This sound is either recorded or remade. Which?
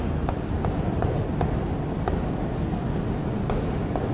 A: recorded